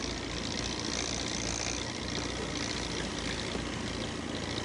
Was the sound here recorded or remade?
recorded